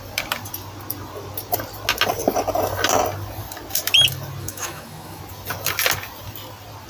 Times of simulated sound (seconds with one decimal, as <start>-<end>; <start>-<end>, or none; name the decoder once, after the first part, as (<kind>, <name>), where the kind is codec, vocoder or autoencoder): 4.4-5.2 (autoencoder, DAC-VAE)